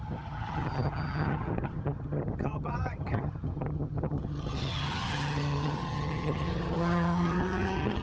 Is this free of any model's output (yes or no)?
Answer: no